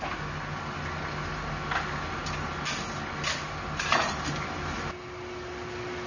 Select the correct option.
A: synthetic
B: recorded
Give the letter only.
B